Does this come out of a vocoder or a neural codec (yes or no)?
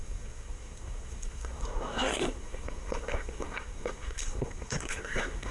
yes